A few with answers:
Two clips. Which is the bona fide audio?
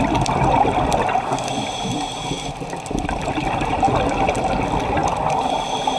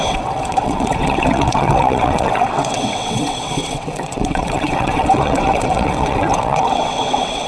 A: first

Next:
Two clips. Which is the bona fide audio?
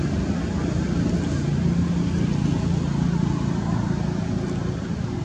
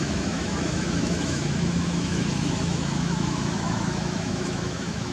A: first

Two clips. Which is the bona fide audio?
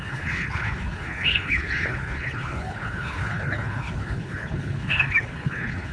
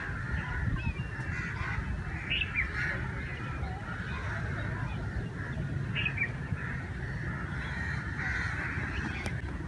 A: second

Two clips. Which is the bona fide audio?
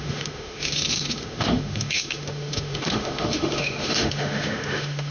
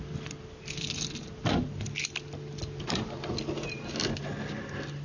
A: second